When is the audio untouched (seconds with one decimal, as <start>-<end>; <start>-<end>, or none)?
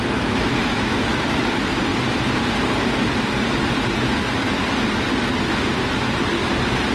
0.0-0.6; 1.2-6.9